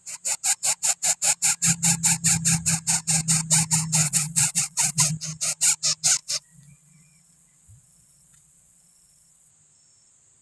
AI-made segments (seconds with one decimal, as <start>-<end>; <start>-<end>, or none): 4.0-5.1; 6.2-9.5